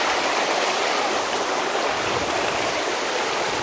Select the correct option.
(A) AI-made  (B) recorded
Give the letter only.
B